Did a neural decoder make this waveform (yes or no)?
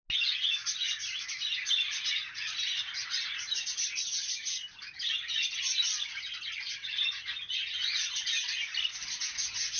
no